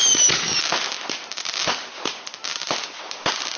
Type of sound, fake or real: real